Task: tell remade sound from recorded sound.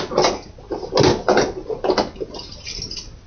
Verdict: recorded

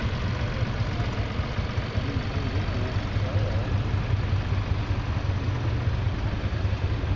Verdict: recorded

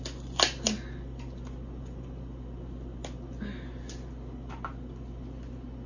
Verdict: recorded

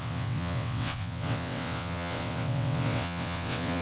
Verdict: remade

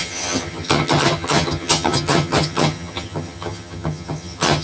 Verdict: remade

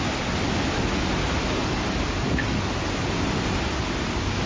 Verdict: recorded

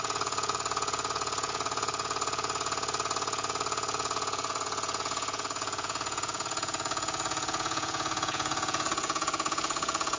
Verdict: remade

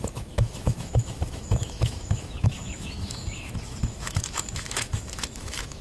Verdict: remade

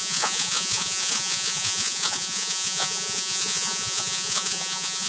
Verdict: remade